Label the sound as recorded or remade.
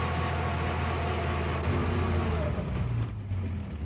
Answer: recorded